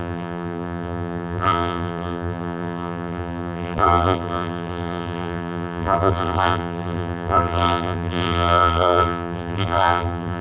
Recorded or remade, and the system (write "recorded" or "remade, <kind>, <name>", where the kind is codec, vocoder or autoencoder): remade, vocoder, BigVGAN v2